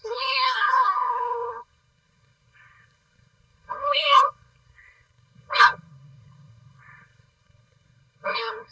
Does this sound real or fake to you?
fake